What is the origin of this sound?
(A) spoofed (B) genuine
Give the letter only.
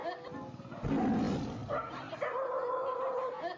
B